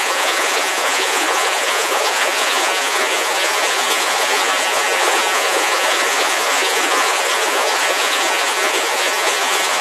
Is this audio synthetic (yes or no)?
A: yes